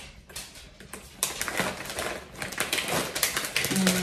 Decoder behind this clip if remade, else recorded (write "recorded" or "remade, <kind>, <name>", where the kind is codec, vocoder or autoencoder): recorded